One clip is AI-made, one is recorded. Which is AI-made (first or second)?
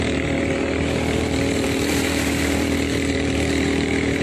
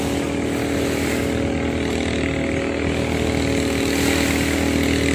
first